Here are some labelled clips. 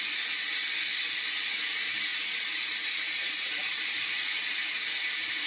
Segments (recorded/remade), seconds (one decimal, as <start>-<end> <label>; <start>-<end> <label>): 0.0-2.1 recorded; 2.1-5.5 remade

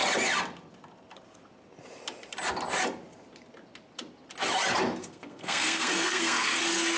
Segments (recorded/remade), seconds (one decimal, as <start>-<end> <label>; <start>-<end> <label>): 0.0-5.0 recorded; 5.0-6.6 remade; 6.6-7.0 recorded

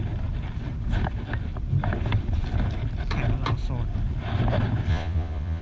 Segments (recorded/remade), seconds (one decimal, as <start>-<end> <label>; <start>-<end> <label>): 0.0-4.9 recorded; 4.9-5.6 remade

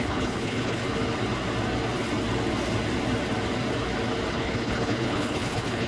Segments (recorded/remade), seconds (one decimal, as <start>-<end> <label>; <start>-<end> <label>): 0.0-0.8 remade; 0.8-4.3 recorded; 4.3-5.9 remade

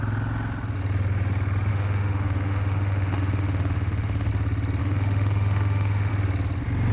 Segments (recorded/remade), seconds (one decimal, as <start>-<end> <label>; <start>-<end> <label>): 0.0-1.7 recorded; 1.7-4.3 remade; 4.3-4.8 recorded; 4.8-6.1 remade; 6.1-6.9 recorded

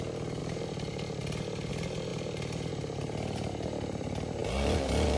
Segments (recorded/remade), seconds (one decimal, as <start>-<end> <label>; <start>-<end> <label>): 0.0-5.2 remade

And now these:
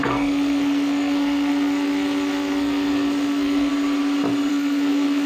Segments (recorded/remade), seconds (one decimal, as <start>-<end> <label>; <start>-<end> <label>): 0.0-3.7 remade; 3.7-4.5 recorded; 4.5-5.3 remade

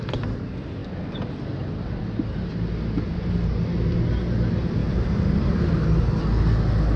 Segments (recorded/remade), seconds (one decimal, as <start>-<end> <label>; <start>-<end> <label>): 0.0-4.8 recorded; 4.8-5.6 remade; 5.6-7.0 recorded